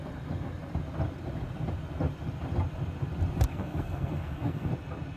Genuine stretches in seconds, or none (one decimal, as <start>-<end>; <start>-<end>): 0.0-3.5; 4.7-5.2